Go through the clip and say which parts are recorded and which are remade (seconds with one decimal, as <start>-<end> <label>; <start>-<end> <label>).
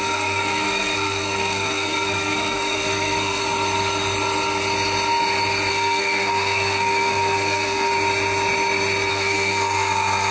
0.0-3.4 remade; 3.4-5.7 recorded; 5.7-7.9 remade; 7.9-9.1 recorded; 9.1-10.3 remade